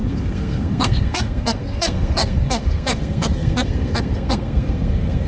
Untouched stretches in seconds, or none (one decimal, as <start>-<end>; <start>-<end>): none